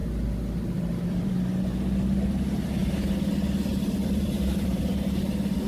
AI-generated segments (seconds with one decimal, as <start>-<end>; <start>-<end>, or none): 0.0-1.3; 4.0-4.9